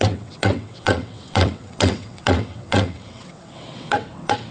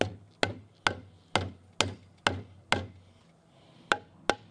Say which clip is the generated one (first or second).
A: first